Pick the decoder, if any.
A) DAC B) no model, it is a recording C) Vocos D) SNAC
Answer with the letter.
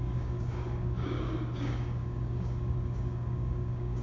A